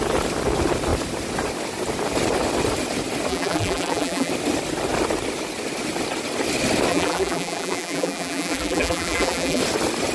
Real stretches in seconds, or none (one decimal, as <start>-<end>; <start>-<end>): 0.0-3.3; 4.3-6.9; 9.6-10.1